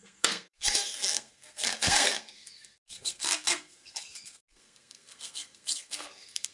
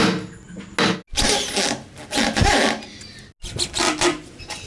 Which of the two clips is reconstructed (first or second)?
first